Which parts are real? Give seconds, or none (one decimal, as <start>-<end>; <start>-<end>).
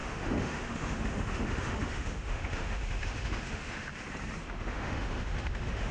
3.9-4.4